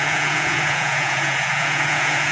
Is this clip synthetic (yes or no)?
yes